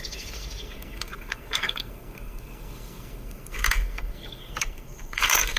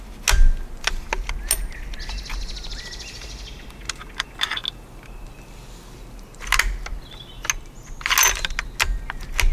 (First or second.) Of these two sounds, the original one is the second